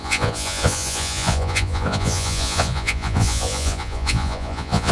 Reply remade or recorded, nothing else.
remade